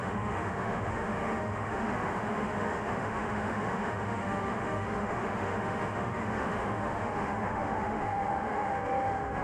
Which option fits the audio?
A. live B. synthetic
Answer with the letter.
B